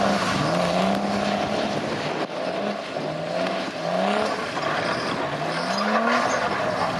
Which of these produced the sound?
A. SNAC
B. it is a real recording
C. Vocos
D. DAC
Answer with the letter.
B